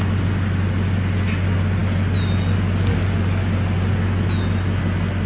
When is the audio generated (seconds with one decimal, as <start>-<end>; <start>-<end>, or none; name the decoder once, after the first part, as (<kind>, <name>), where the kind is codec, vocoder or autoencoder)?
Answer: none

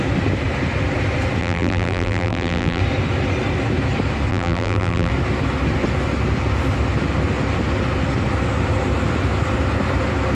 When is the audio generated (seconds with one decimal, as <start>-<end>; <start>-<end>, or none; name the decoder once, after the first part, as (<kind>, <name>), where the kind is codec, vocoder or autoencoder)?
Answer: 1.4-2.8 (vocoder, BigVGAN v2); 4.3-5.1

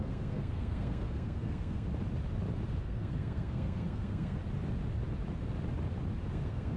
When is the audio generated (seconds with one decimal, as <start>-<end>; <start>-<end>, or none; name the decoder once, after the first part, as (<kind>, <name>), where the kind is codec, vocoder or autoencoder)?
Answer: 0.0-1.9 (codec, SNAC); 2.8-4.4; 6.3-6.8